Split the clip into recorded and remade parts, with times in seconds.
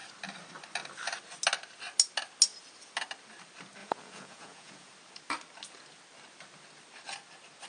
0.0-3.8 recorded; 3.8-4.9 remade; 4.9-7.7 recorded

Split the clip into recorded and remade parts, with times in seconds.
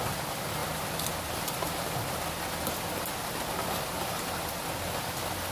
0.0-5.5 recorded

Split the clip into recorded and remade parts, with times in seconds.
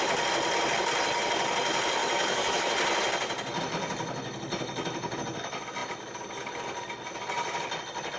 0.0-2.0 recorded; 2.0-2.7 remade; 2.7-8.2 recorded